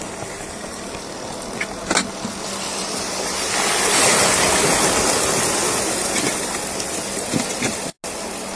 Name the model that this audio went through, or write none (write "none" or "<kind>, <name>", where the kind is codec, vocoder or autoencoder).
none